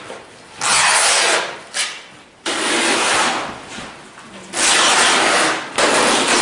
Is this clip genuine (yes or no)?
yes